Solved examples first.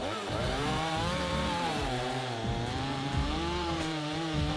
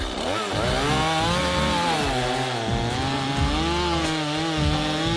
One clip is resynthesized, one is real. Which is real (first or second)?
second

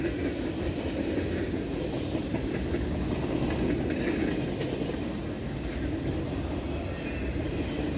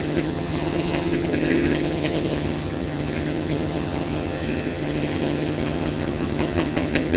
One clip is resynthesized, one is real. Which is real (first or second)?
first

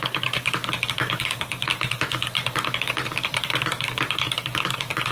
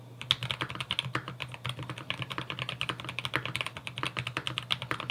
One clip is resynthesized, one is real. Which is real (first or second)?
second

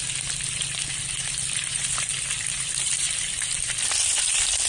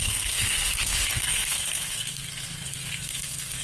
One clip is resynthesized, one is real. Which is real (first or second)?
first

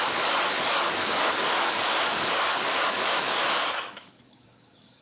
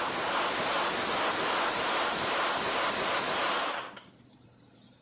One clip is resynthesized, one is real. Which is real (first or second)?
second